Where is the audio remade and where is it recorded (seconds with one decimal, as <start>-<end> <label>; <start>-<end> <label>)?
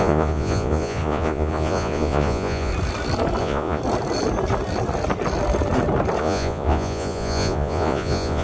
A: 0.0-2.7 remade; 2.7-3.4 recorded; 3.4-3.8 remade; 3.8-6.2 recorded; 6.2-8.4 remade